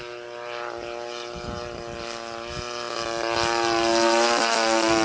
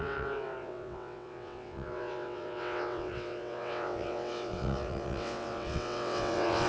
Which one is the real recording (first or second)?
first